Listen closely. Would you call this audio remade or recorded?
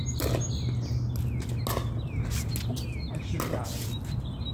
recorded